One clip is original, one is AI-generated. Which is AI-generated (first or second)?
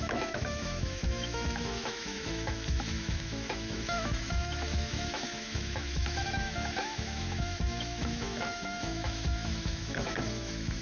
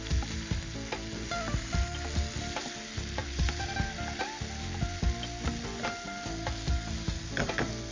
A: first